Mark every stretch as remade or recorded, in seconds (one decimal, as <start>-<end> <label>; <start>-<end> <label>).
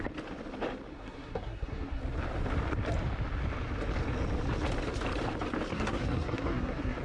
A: 0.0-0.9 recorded; 0.9-2.0 remade; 2.0-5.7 recorded; 5.7-7.0 remade